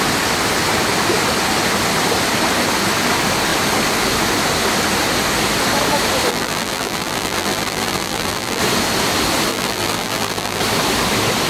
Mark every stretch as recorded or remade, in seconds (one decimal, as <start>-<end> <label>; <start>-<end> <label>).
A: 0.0-6.3 recorded; 6.3-8.6 remade; 8.6-9.5 recorded; 9.5-10.6 remade; 10.6-11.5 recorded